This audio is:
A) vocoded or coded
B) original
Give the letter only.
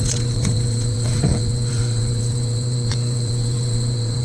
A